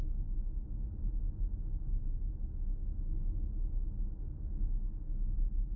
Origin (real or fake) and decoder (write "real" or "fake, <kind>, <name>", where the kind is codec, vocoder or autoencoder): real